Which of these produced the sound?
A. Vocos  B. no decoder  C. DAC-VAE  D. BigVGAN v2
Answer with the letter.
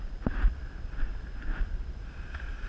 B